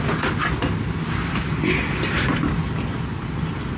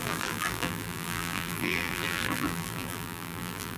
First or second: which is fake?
second